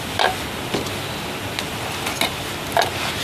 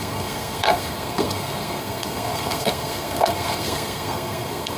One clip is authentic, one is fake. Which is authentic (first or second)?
first